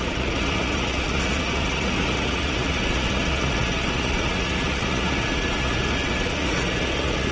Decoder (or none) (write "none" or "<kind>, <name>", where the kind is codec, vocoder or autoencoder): vocoder, Vocos